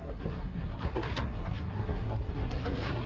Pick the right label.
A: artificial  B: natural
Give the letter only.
A